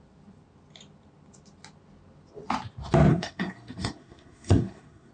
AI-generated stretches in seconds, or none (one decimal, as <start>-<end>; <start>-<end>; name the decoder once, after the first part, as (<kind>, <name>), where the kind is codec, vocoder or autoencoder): 3.1-5.1 (codec, SNAC)